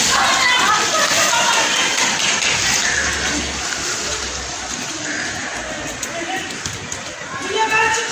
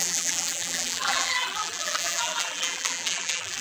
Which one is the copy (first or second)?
second